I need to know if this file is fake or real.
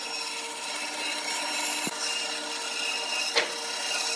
real